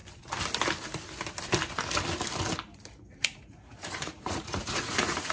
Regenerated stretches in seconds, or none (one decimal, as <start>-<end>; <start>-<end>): 3.2-5.3